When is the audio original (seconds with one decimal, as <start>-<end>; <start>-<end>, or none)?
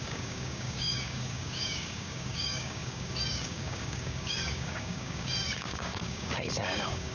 none